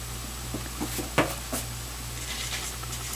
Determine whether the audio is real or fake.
real